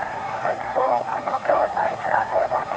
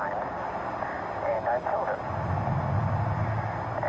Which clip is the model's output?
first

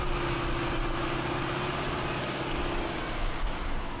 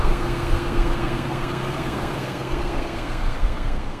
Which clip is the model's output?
second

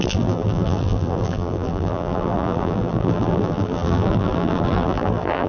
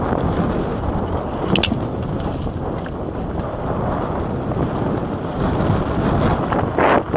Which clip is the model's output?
first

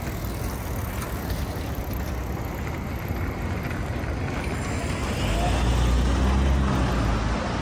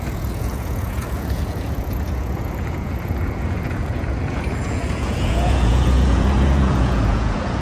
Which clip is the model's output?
second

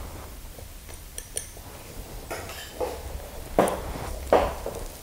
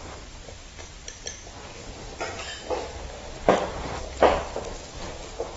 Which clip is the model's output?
first